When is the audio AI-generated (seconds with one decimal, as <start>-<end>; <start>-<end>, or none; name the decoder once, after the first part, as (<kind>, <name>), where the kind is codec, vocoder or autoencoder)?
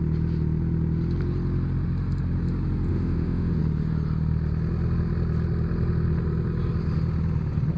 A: 2.9-3.6 (autoencoder, DAC-VAE)